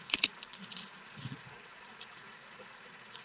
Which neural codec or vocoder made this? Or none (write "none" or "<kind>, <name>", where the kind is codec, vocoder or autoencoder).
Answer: vocoder, Vocos